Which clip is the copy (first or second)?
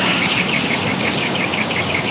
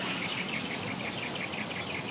first